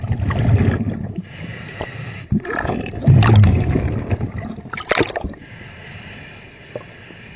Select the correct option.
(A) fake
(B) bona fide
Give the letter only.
B